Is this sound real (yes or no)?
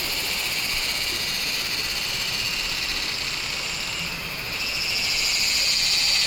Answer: yes